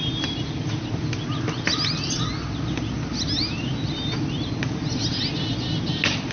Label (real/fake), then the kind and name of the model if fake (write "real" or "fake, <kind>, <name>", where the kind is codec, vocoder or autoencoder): real